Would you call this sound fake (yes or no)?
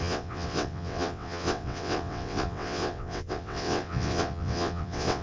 yes